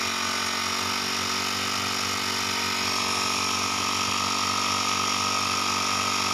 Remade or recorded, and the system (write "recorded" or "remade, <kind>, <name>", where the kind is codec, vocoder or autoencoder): recorded